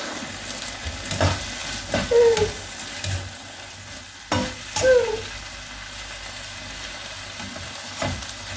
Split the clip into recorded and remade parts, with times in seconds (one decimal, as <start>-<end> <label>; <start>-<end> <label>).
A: 0.0-8.6 recorded